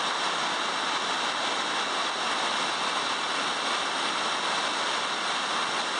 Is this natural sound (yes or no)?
yes